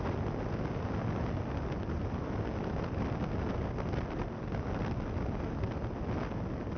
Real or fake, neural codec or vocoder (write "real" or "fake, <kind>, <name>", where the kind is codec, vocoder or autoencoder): real